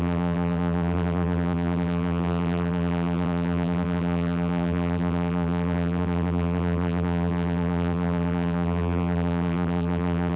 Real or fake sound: fake